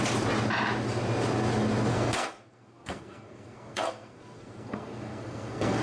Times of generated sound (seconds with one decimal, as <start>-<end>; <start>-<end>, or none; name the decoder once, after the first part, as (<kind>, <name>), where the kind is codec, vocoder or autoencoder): 1.9-5.8 (codec, SNAC)